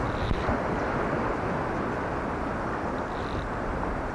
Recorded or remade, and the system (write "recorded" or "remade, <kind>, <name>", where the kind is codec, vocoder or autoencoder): recorded